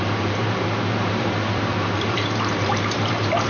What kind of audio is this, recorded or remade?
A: remade